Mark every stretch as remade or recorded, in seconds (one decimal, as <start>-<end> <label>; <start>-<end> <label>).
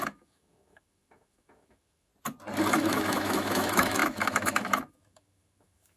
0.0-2.1 remade; 2.1-2.7 recorded; 2.7-6.0 remade